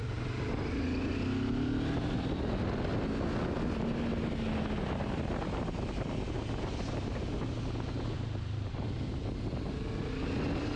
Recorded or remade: recorded